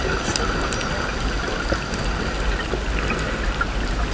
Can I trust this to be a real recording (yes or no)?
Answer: yes